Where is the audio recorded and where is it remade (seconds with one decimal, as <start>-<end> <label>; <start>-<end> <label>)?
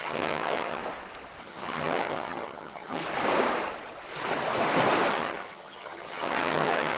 0.0-0.8 remade; 0.8-1.4 recorded; 1.4-3.0 remade; 3.0-5.1 recorded; 5.1-7.0 remade